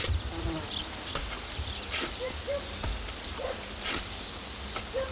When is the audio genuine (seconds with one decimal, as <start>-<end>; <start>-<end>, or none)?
0.0-5.1